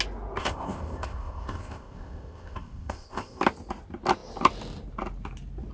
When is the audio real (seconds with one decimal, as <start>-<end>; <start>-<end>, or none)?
0.0-0.4; 3.4-5.7